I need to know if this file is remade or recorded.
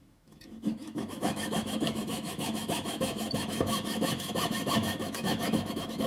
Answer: remade